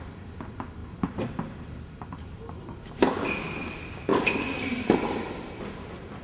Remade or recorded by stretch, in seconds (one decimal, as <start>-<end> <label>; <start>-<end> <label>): 0.0-4.1 recorded; 4.1-5.3 remade; 5.3-6.2 recorded